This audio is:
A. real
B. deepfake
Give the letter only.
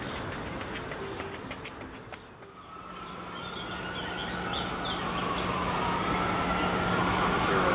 A